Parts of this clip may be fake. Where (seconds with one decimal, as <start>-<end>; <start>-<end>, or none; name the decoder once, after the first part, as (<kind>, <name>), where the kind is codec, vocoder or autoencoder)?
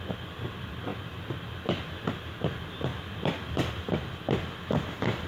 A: none